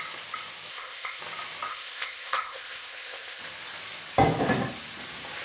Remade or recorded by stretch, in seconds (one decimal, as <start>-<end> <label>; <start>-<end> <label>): 0.0-0.7 recorded; 0.7-1.2 remade; 1.2-1.7 recorded; 1.7-3.4 remade; 3.4-5.4 recorded